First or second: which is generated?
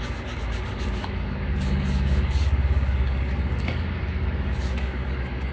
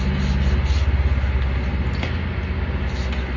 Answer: first